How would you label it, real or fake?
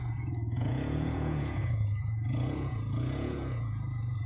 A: fake